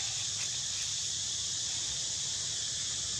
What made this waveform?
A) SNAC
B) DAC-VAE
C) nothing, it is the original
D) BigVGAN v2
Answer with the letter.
C